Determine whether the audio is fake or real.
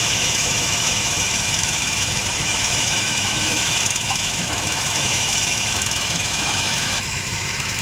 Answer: fake